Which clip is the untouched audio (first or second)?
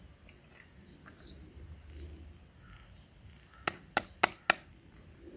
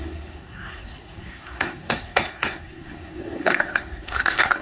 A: first